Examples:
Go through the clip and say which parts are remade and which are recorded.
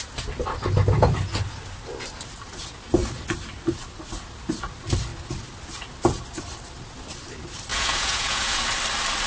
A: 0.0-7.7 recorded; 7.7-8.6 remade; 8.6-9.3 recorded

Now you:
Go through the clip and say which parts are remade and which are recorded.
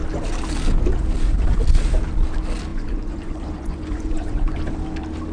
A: 0.0-2.7 recorded; 2.7-4.6 remade; 4.6-5.3 recorded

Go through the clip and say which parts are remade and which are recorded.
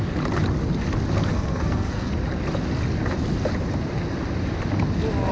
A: 0.0-1.3 recorded; 1.3-2.1 remade; 2.1-5.3 recorded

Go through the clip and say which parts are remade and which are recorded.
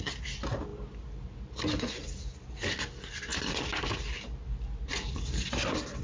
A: 0.0-6.0 recorded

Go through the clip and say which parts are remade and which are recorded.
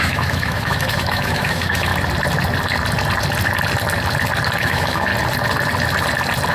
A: 0.0-1.9 remade; 1.9-4.6 recorded; 4.6-5.1 remade; 5.1-6.5 recorded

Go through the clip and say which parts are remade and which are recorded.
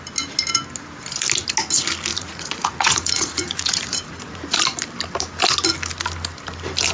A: 0.0-2.1 recorded; 2.1-4.6 remade; 4.6-6.9 recorded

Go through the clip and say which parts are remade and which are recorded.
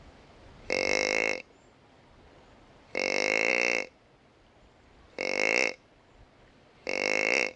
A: 0.0-7.6 recorded